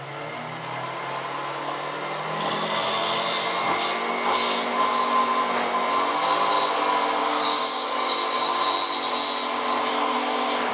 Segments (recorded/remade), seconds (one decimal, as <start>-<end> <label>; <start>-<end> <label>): 0.0-7.2 recorded; 7.2-8.6 remade; 8.6-9.9 recorded; 9.9-10.7 remade